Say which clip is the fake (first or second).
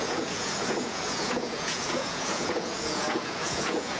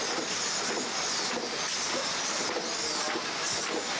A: first